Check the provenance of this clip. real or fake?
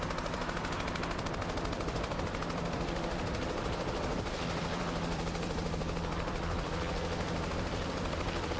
fake